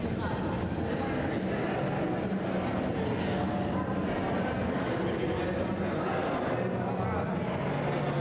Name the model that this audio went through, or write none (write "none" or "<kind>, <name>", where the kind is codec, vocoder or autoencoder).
none